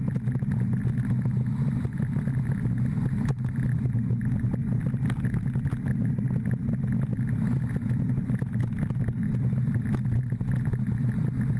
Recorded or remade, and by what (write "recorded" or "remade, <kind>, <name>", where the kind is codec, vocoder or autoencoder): recorded